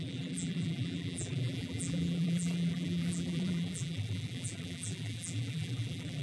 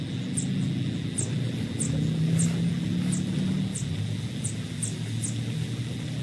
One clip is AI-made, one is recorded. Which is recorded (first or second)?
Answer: second